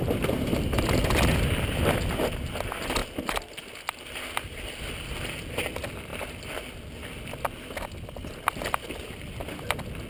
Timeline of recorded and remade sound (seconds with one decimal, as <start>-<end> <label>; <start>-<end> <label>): 0.0-10.1 recorded